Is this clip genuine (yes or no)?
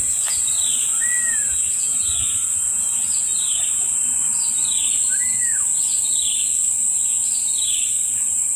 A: yes